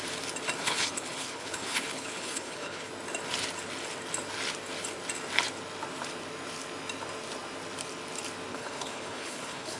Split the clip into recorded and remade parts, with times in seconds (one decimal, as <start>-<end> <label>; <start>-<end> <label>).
0.0-0.6 recorded; 0.6-2.9 remade; 2.9-8.5 recorded; 8.5-9.8 remade